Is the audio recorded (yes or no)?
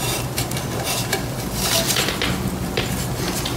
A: yes